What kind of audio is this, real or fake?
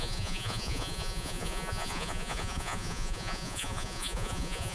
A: fake